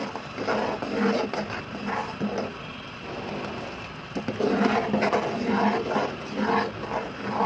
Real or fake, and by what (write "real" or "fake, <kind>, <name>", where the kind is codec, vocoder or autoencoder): real